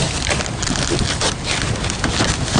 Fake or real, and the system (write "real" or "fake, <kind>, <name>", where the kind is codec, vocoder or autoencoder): real